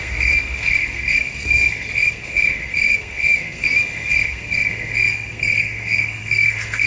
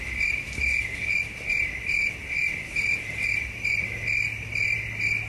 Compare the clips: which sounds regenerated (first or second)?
first